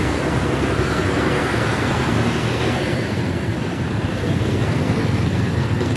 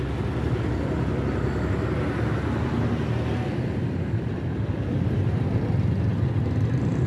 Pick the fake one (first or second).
first